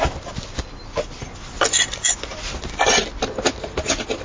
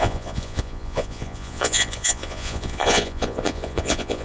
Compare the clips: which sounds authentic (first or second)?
first